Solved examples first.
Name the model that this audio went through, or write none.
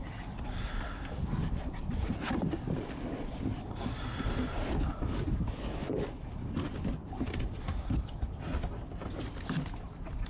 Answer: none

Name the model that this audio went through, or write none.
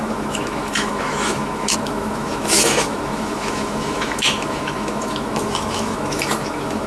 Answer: autoencoder, DAC-VAE